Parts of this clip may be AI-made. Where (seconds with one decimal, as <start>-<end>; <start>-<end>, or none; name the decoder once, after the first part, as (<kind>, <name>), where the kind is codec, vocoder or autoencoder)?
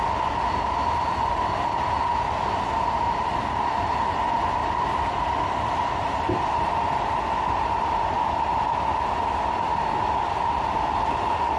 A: 4.6-5.1 (vocoder, BigVGAN v2)